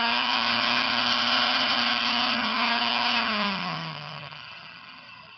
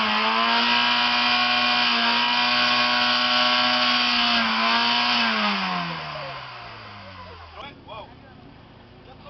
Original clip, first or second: second